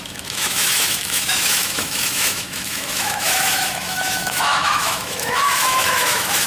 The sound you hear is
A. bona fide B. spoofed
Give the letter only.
B